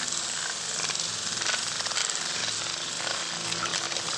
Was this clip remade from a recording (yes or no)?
no